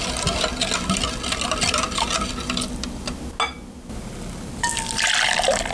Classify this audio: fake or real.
real